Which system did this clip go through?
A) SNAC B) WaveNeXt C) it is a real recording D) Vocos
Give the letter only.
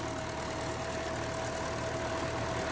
C